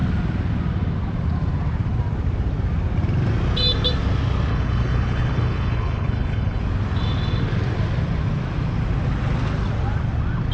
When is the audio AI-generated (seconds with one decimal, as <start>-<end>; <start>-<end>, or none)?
4.5-6.6